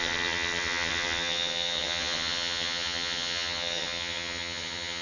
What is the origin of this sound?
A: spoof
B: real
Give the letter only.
A